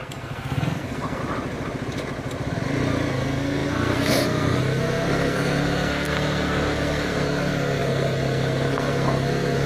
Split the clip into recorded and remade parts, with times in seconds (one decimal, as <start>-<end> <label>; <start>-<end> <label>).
0.0-1.2 remade; 1.2-3.1 recorded; 3.1-9.7 remade